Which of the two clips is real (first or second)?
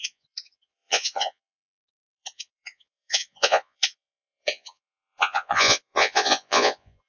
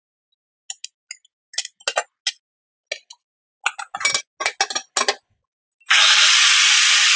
second